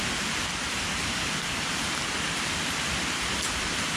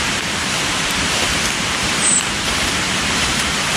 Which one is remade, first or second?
second